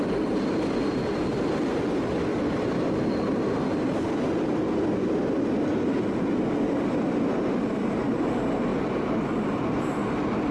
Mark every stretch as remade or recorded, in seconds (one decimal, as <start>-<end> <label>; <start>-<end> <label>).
0.0-2.3 recorded; 2.3-3.1 remade; 3.1-10.5 recorded